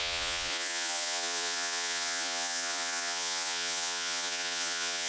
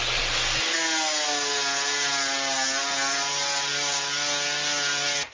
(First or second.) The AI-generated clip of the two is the first